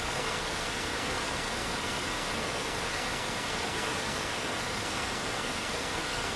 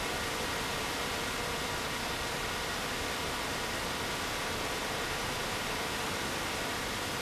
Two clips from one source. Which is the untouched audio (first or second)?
second